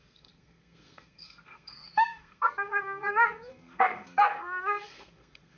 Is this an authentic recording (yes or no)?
no